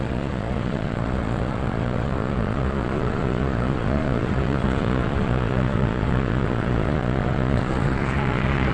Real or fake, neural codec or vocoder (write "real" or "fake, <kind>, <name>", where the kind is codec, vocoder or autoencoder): fake, vocoder, Vocos